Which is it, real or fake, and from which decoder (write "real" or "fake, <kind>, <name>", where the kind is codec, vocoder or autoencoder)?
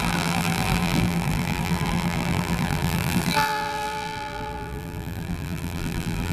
fake, vocoder, BigVGAN v2